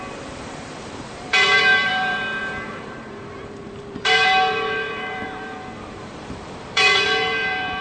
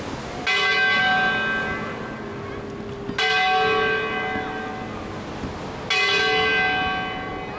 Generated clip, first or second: first